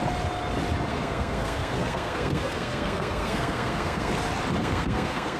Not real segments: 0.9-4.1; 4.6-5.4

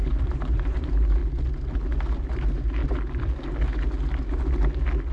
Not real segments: 0.0-1.2; 2.3-2.8